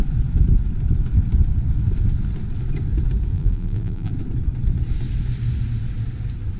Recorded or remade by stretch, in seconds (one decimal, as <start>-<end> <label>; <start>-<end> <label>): 0.0-3.3 recorded; 3.3-4.1 remade; 4.1-6.6 recorded